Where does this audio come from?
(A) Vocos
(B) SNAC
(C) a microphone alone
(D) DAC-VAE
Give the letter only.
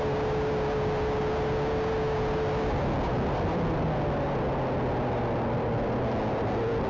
C